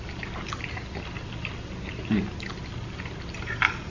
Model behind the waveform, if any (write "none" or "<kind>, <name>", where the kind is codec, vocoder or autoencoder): none